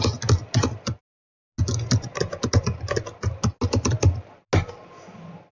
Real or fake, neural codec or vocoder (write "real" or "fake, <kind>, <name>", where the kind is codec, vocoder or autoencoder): real